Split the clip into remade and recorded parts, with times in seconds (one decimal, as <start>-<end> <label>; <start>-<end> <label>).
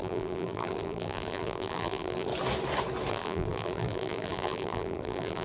0.0-2.3 remade; 2.3-3.1 recorded; 3.1-5.4 remade